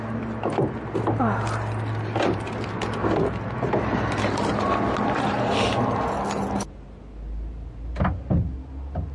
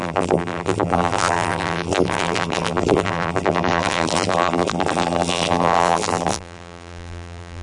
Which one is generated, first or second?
second